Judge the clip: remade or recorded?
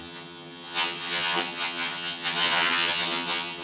remade